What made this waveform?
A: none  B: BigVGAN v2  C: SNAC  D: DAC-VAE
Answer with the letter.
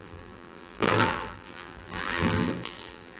B